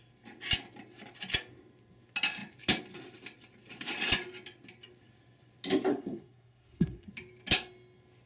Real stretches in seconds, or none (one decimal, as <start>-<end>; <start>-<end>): 0.0-5.9; 7.1-8.3